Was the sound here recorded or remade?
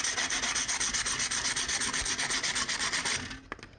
recorded